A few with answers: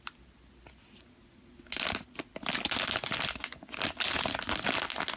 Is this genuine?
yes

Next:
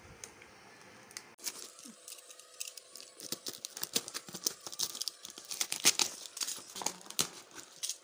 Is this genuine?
yes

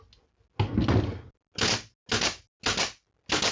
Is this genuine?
yes